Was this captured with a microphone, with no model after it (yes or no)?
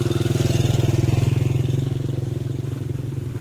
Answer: yes